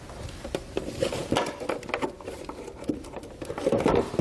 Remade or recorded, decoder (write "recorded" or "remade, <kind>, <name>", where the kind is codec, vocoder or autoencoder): recorded